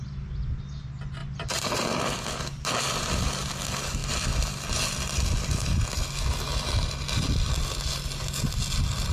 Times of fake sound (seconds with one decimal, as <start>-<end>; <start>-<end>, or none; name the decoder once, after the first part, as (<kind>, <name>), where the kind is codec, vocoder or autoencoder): 1.2-3.2 (vocoder, BigVGAN v2)